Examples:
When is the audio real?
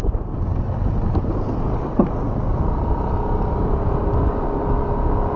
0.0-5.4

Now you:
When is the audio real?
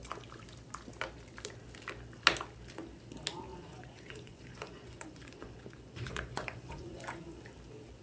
0.0-3.5; 7.4-8.0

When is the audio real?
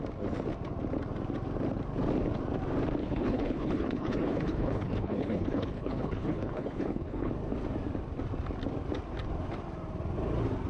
0.0-3.0; 7.3-10.7